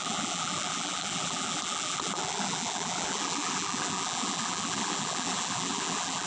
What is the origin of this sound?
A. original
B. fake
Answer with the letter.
B